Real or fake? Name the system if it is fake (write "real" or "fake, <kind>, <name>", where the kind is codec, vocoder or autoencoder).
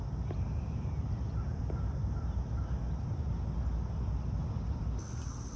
real